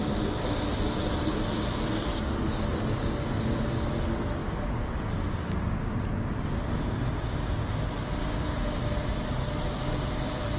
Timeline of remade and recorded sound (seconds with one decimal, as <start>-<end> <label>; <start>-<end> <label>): 0.0-2.1 recorded; 2.1-2.6 remade; 2.6-4.4 recorded; 4.4-5.0 remade; 5.0-8.2 recorded; 8.2-9.0 remade; 9.0-10.6 recorded